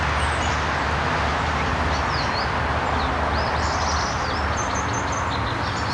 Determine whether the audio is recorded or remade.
recorded